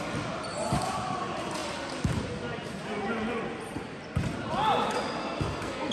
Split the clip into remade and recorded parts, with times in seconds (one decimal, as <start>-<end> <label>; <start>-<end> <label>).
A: 0.0-5.2 recorded; 5.2-5.9 remade